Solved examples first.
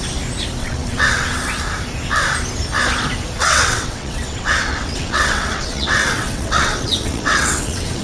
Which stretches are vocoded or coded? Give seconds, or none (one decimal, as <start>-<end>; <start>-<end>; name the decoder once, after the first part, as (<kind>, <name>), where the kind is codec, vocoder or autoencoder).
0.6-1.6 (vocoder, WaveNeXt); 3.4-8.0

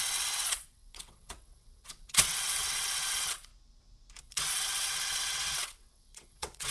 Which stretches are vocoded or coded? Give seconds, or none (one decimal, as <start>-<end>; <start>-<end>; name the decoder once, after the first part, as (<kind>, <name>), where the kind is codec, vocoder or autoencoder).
0.0-3.5 (vocoder, WaveNeXt); 4.2-6.7

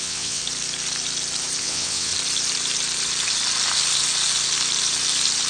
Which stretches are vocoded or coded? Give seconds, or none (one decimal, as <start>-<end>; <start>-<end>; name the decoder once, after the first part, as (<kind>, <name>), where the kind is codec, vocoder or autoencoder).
0.0-0.4 (vocoder, WaveNeXt); 1.6-2.1

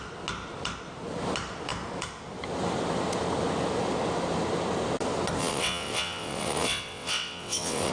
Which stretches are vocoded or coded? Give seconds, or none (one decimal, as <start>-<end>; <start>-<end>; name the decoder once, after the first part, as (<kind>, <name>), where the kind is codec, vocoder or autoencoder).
5.4-7.9 (vocoder, WaveNeXt)